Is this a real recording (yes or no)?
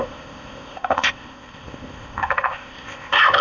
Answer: no